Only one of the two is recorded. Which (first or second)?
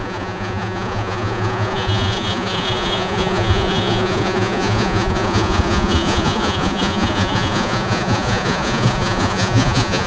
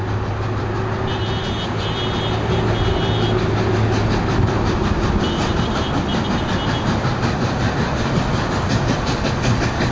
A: second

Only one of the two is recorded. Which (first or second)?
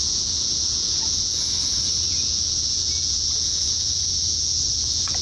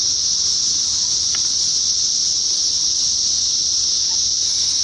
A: second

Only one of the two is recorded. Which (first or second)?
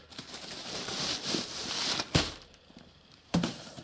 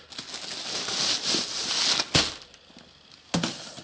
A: second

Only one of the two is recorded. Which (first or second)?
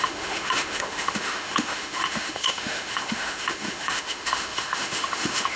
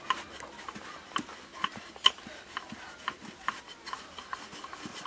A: second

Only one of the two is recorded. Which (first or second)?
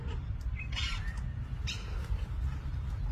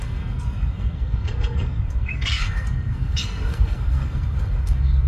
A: first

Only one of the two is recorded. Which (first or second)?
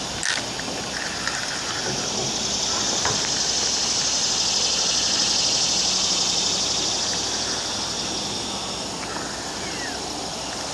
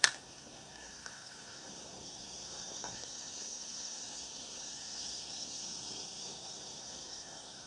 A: first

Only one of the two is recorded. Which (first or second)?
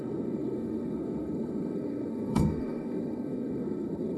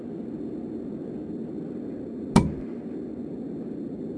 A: second